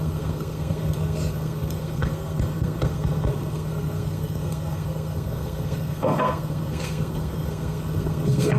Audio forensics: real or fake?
fake